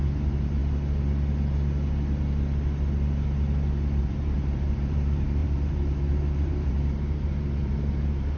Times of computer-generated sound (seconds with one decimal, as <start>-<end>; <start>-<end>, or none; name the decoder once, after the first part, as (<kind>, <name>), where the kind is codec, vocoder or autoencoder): 0.0-0.6 (vocoder, BigVGAN v2); 4.0-8.4